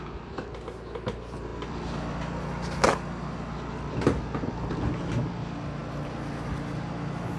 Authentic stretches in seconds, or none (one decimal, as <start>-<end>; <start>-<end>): 0.0-7.4